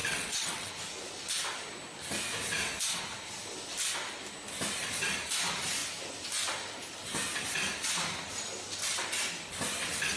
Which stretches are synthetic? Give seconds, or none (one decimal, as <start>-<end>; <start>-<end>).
0.0-0.7